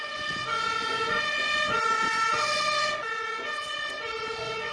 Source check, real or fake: fake